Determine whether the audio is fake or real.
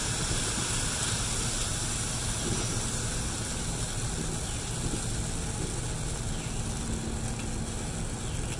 real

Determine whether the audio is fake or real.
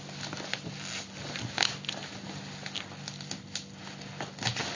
real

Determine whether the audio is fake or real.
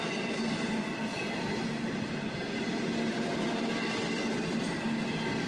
real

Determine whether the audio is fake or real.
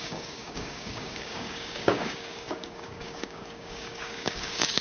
fake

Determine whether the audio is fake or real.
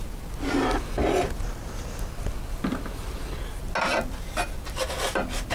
real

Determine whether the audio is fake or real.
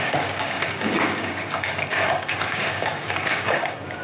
fake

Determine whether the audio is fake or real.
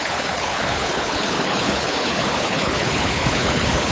fake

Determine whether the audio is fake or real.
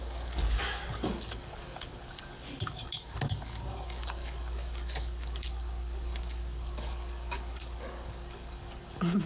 fake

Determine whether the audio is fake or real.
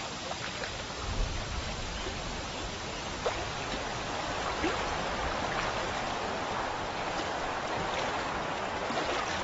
fake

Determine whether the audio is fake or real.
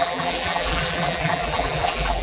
fake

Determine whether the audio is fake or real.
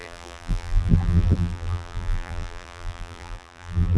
fake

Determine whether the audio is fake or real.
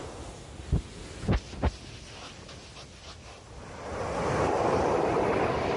real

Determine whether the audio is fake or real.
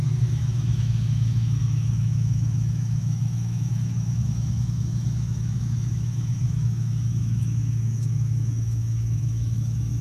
fake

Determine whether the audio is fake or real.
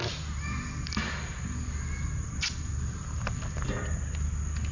real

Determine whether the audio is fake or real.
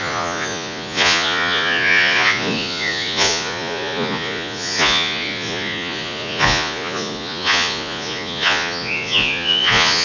fake